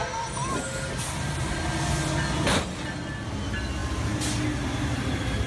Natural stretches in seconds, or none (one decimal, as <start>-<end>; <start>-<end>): 0.0-5.5

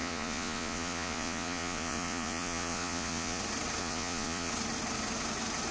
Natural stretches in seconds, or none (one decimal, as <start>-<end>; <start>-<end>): 3.4-3.8; 4.5-5.7

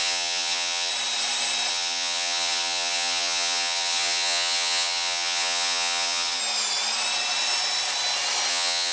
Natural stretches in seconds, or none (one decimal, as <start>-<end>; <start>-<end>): 0.9-1.7; 6.4-8.5

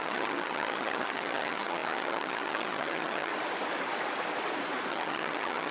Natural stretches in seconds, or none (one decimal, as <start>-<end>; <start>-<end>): 3.3-4.9

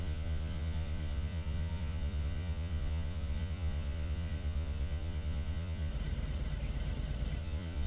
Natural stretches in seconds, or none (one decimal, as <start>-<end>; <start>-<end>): 5.9-7.4